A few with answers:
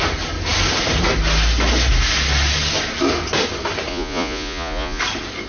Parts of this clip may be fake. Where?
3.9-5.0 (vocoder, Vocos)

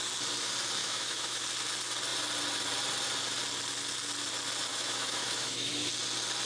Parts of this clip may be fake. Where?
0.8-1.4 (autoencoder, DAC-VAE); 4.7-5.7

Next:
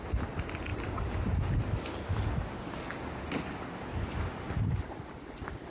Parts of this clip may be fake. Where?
none